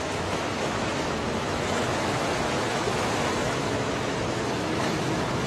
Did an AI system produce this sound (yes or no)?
yes